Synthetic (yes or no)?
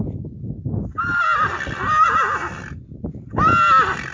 no